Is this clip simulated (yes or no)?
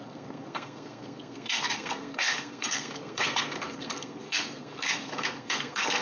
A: yes